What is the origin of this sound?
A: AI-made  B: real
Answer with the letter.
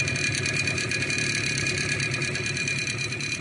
A